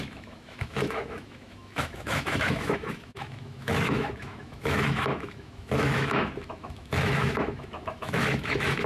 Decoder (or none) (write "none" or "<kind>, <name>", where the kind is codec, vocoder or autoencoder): autoencoder, DAC-VAE